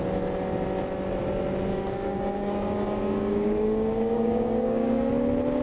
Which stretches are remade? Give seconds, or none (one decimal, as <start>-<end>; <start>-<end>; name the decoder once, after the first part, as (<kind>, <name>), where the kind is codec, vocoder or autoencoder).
1.7-5.1 (codec, DAC)